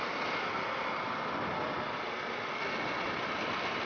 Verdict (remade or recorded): recorded